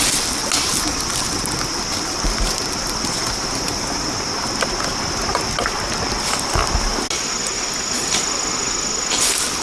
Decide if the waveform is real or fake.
real